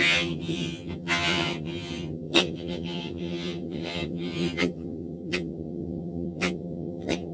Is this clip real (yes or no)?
no